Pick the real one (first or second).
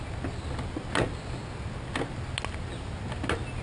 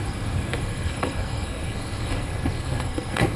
first